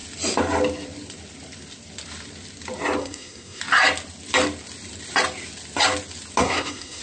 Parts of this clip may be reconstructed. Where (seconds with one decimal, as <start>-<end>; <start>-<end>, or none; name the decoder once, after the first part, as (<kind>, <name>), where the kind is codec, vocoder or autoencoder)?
3.0-3.6 (codec, SNAC); 6.4-7.0